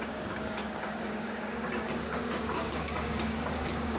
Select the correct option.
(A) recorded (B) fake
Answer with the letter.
B